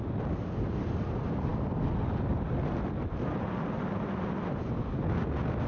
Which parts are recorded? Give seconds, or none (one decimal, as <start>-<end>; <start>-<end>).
0.0-5.7